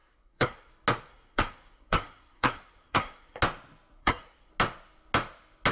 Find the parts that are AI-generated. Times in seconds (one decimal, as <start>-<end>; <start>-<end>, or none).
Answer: 0.0-0.7; 1.1-3.4; 4.0-4.5